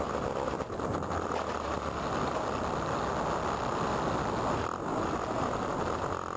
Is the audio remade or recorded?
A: recorded